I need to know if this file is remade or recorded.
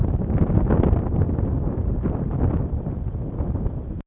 recorded